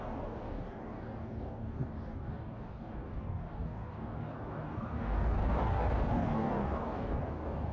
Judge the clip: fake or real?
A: fake